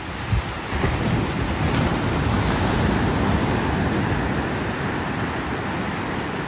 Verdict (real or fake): real